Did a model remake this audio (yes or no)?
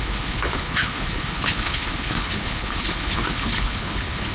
yes